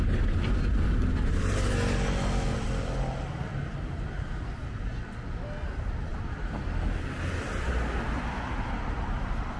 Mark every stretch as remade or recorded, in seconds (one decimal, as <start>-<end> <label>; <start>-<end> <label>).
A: 0.0-9.6 recorded